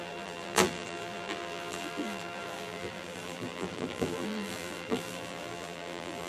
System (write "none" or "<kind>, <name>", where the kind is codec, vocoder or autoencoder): vocoder, BigVGAN v2